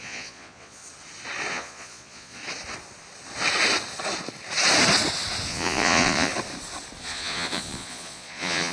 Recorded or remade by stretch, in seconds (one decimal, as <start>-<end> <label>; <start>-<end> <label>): 0.0-0.8 remade; 0.8-1.5 recorded; 1.5-2.4 remade; 2.4-5.5 recorded; 5.5-6.3 remade; 6.3-7.0 recorded; 7.0-8.7 remade